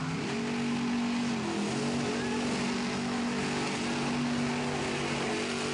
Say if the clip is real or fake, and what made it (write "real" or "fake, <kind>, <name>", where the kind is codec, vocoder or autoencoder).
real